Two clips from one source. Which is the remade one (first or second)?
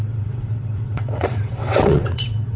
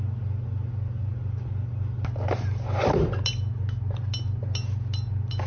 first